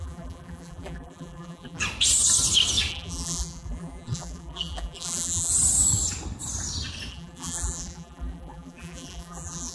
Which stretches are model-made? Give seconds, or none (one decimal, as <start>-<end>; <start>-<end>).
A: 0.0-1.8; 2.9-5.5; 7.1-9.7